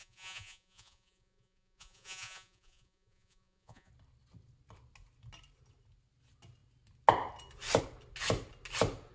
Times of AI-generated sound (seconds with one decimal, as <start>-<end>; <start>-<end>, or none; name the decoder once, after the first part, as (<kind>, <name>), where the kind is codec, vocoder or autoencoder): 0.0-3.9 (vocoder, Vocos)